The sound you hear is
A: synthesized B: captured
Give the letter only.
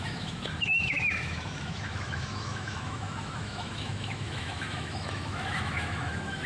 A